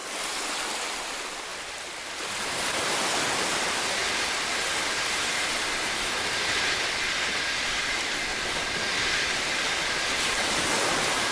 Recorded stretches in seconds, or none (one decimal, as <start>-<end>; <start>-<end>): 0.0-11.3